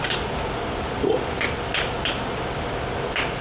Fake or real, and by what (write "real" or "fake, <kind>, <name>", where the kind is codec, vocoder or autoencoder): real